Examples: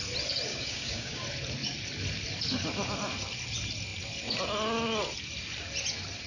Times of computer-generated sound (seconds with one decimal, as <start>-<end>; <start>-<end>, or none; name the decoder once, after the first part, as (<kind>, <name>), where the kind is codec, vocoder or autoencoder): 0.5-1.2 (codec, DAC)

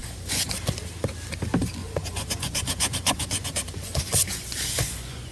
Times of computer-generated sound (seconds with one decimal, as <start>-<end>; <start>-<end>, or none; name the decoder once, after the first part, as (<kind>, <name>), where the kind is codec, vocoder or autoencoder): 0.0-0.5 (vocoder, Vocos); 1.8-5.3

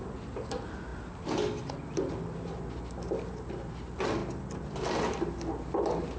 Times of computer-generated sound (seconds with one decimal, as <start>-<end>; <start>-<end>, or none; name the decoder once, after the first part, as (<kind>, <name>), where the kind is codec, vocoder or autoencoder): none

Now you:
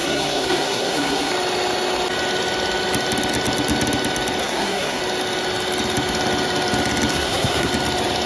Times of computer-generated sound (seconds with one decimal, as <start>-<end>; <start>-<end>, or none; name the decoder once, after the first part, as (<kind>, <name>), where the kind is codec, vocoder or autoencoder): 0.0-1.3 (codec, SNAC); 4.4-5.0; 7.1-7.7

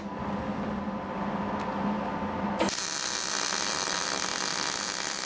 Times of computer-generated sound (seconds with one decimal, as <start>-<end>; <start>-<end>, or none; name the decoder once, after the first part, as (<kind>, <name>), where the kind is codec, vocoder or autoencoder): none